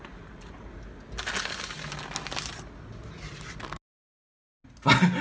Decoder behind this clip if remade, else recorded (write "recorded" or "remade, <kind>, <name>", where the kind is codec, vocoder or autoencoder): recorded